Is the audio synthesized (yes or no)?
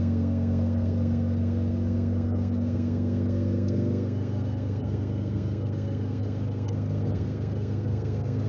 yes